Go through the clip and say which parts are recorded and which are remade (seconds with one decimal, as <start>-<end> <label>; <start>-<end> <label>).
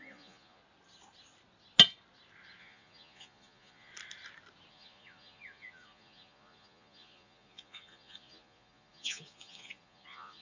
0.0-0.6 remade; 0.6-2.6 recorded; 2.6-3.9 remade; 3.9-4.7 recorded; 4.7-10.4 remade